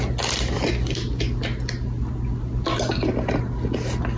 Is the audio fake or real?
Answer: real